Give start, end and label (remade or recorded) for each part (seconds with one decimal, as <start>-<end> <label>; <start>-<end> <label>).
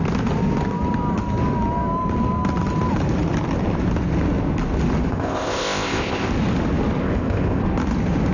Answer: 0.0-5.1 recorded; 5.1-6.3 remade; 6.3-7.0 recorded; 7.0-7.6 remade; 7.6-8.3 recorded